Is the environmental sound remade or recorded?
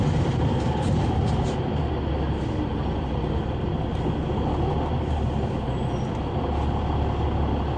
recorded